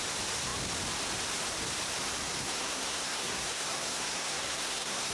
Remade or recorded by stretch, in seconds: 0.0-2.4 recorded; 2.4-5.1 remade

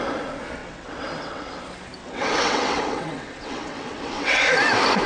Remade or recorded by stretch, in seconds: 0.0-0.6 recorded; 0.6-1.6 remade; 1.6-2.0 recorded; 2.0-4.4 remade; 4.4-5.1 recorded

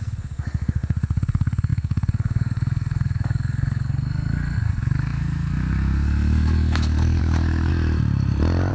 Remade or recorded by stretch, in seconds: 0.0-7.7 remade; 7.7-8.7 recorded

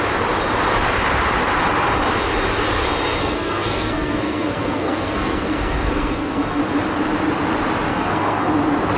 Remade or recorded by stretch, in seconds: 0.0-3.2 recorded; 3.2-6.6 remade; 6.6-7.9 recorded; 7.9-8.5 remade; 8.5-9.0 recorded

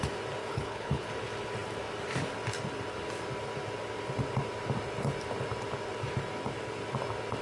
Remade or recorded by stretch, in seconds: 0.0-0.4 recorded; 0.4-1.1 remade; 1.1-7.4 recorded

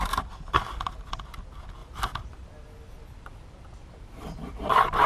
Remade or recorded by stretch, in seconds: 0.0-1.8 recorded; 1.8-5.1 remade

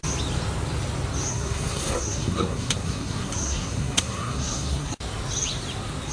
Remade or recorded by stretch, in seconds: 0.0-1.3 recorded; 1.3-5.0 remade; 5.0-6.1 recorded